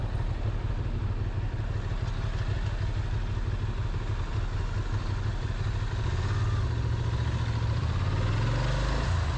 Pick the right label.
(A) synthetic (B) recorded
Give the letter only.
B